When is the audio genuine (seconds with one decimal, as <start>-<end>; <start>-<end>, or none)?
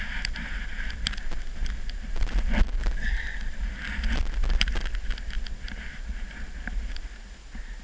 0.0-7.8